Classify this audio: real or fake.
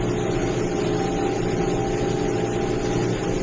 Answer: real